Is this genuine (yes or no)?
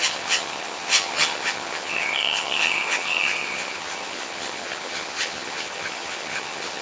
no